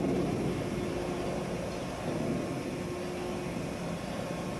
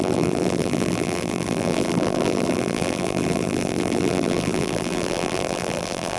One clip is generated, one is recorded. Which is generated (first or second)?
second